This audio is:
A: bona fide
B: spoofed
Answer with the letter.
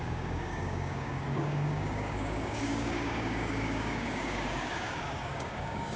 B